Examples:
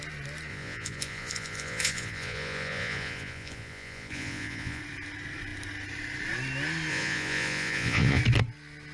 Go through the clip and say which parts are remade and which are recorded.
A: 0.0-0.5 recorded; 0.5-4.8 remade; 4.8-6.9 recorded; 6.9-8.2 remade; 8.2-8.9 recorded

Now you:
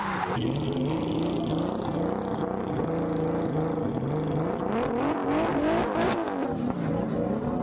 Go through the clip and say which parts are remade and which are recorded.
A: 0.0-7.6 recorded